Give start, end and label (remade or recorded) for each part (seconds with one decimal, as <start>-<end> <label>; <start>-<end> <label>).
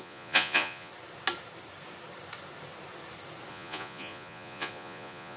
0.0-0.9 remade; 0.9-3.5 recorded; 3.5-5.4 remade